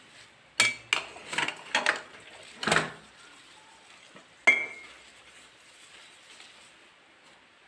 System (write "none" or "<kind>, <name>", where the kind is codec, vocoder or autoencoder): none